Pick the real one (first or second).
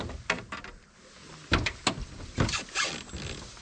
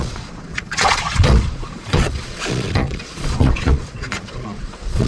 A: first